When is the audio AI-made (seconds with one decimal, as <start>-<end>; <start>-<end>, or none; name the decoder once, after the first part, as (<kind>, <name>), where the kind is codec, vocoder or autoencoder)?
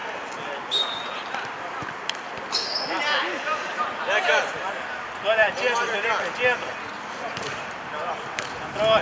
none